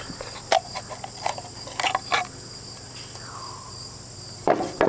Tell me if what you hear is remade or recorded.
recorded